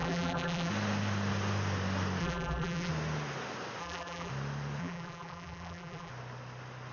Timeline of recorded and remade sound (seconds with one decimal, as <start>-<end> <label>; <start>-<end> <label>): 0.0-0.7 remade; 0.7-2.2 recorded; 2.2-2.9 remade; 2.9-3.8 recorded; 3.8-4.3 remade; 4.3-4.8 recorded; 4.8-6.1 remade; 6.1-6.9 recorded